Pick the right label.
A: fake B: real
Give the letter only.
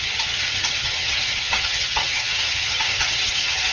A